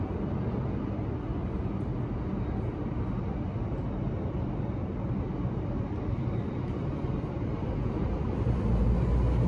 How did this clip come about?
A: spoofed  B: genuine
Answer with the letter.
B